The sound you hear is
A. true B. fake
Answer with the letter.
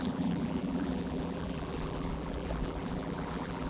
B